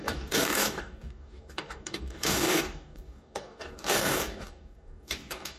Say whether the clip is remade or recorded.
remade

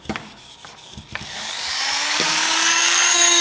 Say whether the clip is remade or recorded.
remade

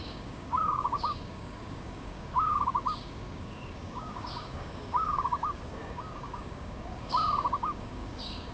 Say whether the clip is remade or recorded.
remade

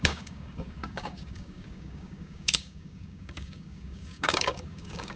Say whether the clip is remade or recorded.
remade